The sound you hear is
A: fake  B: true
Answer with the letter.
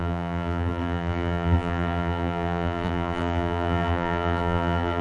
A